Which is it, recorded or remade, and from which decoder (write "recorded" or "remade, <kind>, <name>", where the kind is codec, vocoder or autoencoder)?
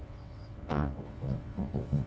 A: remade, vocoder, WaveNeXt